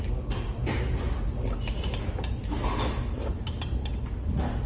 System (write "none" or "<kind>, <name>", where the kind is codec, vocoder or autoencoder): none